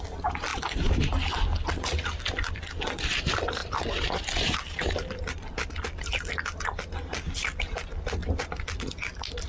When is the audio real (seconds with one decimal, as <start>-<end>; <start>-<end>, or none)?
0.0-3.6; 5.7-8.2